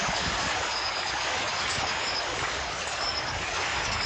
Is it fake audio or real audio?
fake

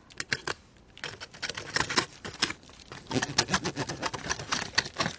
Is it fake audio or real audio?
real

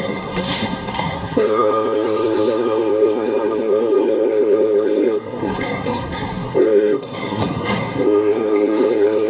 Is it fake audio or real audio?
fake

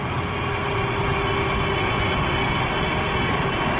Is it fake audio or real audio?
real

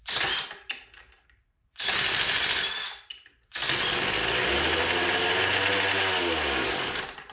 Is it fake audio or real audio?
real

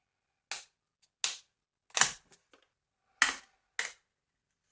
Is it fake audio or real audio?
real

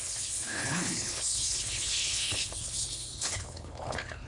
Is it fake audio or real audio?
fake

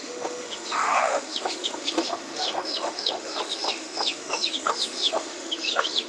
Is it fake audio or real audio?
fake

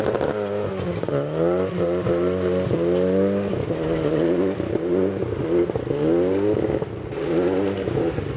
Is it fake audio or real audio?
real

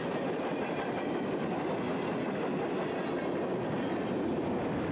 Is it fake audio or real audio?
real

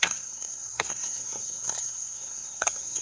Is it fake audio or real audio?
fake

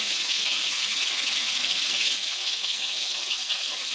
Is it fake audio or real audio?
fake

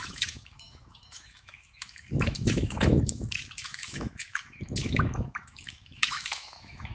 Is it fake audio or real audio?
fake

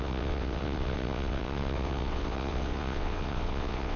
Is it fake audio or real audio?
fake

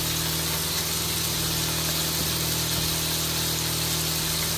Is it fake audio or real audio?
real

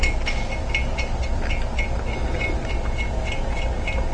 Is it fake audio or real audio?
real